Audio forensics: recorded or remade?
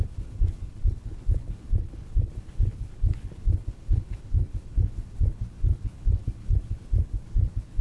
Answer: remade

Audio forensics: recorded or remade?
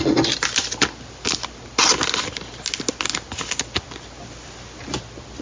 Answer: recorded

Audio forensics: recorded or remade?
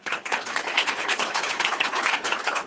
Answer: remade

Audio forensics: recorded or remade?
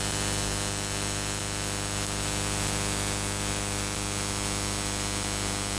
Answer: recorded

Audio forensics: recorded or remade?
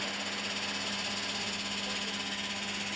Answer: recorded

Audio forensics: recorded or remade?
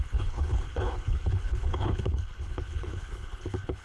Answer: remade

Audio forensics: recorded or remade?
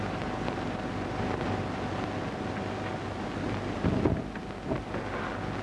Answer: recorded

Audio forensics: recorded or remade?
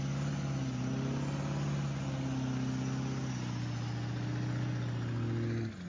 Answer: recorded